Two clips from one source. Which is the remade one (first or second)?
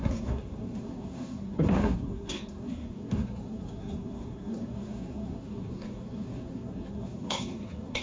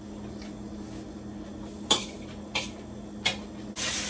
first